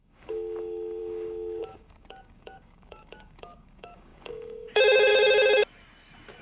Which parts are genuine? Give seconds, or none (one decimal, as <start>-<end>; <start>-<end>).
5.6-6.4

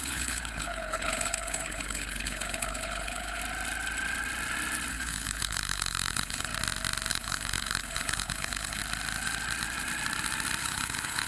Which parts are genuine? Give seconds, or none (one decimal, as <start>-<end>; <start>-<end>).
3.4-4.9; 6.5-7.1; 8.8-10.6

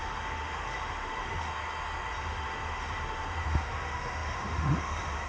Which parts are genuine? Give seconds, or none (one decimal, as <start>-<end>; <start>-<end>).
1.5-2.2

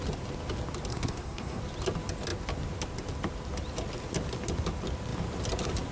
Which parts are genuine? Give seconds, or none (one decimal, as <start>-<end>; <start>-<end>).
0.0-0.9; 1.6-5.9

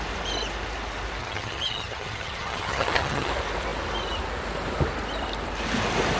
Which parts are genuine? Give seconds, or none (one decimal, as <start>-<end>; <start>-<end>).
0.0-1.2; 3.3-6.2

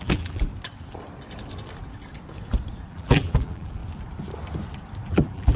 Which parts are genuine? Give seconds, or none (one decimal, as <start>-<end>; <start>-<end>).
0.5-2.9; 3.8-5.1